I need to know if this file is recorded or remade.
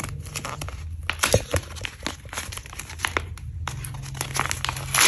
recorded